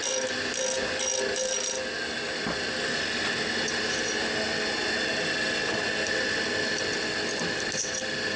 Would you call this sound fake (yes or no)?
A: no